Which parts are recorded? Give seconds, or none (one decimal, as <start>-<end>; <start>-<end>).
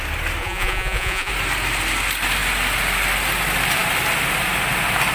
0.0-0.4; 1.3-5.1